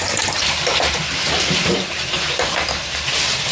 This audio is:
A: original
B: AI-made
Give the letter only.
B